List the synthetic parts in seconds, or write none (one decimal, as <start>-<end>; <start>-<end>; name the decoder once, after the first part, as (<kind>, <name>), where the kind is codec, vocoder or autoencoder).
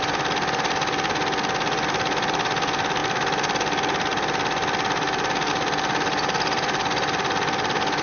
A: none